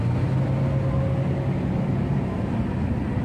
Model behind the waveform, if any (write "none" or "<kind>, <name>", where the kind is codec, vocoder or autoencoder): none